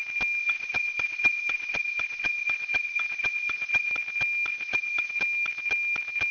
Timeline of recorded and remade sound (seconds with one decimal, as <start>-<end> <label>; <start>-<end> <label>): 0.0-0.4 recorded; 0.4-3.9 remade; 3.9-4.5 recorded; 4.5-5.1 remade; 5.1-6.3 recorded